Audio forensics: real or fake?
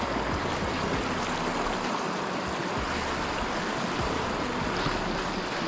real